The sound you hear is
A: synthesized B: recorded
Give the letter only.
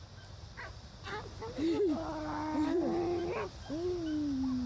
B